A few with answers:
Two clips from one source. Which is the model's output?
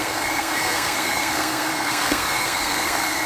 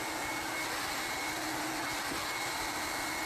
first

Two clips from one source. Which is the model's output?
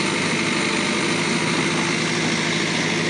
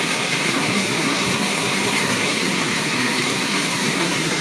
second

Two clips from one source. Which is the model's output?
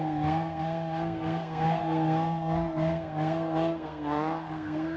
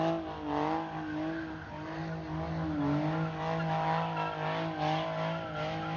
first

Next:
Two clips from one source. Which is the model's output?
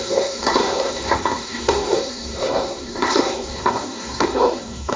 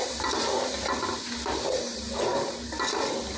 first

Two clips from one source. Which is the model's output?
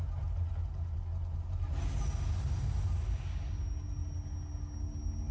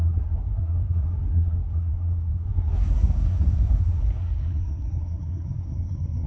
second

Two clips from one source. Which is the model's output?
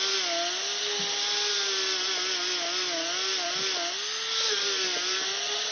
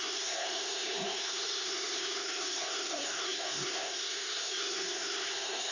second